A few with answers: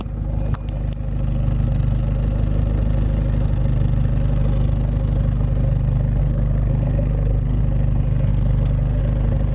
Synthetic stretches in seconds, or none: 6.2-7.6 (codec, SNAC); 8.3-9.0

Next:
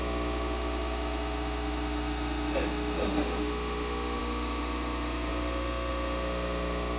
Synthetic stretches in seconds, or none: 0.0-7.0 (autoencoder, DAC-VAE)

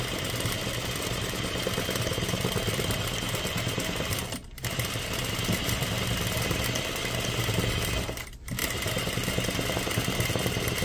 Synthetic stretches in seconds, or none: 0.0-8.6 (vocoder, BigVGAN v2); 9.7-10.8